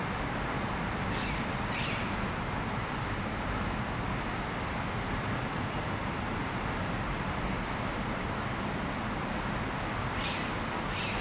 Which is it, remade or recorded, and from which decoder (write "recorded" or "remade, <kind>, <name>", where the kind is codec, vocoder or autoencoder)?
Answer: recorded